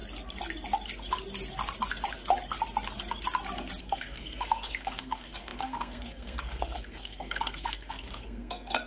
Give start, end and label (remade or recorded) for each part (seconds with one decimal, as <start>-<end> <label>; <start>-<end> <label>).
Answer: 0.0-3.8 recorded; 3.8-8.9 remade